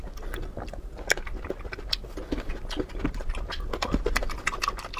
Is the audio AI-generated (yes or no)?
no